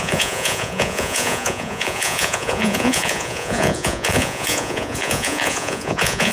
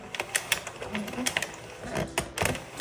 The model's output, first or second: first